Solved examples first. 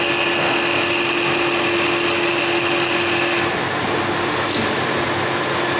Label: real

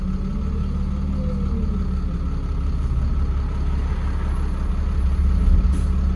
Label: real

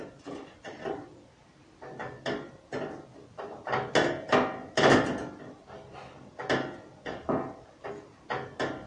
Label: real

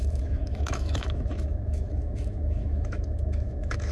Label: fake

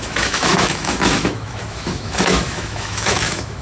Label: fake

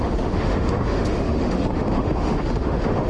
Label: fake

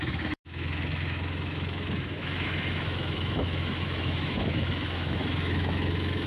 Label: fake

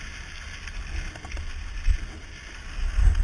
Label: real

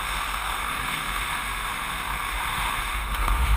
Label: fake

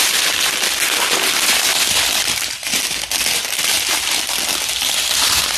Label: real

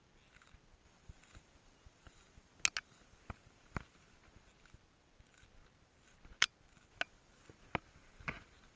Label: real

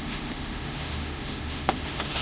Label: fake